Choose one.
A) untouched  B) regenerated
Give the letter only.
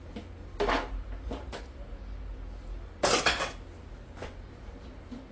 A